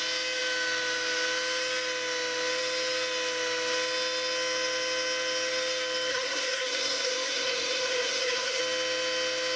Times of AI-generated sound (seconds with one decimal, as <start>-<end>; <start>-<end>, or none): 6.1-8.6